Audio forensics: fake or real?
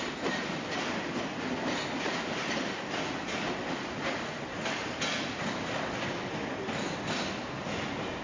real